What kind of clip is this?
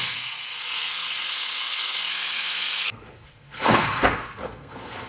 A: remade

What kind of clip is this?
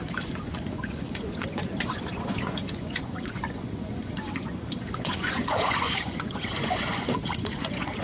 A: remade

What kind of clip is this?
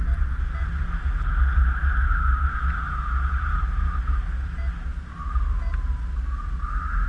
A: recorded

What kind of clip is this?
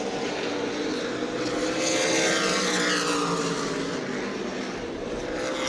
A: recorded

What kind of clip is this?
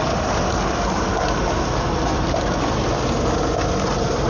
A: recorded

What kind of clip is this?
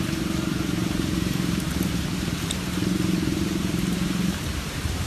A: remade